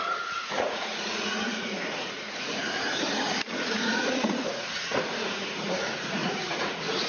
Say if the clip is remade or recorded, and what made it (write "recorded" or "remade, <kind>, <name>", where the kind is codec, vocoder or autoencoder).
remade, vocoder, Vocos